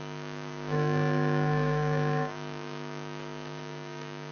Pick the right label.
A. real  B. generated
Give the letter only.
B